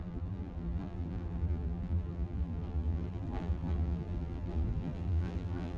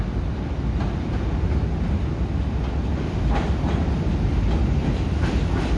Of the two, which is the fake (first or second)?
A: first